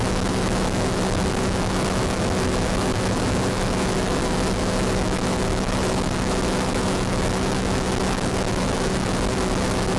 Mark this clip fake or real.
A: fake